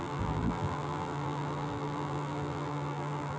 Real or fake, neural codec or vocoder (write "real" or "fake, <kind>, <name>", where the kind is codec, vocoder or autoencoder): fake, vocoder, BigVGAN v2